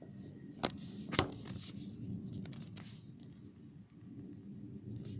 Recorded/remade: recorded